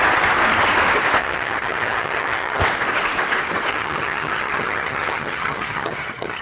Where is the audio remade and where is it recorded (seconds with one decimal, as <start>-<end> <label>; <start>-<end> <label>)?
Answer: 0.0-1.2 recorded; 1.2-2.6 remade; 2.6-3.7 recorded; 3.7-6.4 remade